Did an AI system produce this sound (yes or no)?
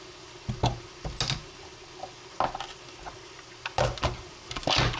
no